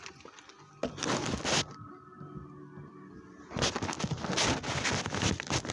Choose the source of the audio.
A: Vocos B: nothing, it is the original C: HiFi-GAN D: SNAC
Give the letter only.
B